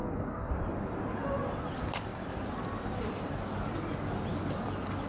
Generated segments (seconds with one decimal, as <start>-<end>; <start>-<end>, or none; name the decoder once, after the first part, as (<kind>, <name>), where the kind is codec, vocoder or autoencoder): 0.0-0.5 (codec, SNAC)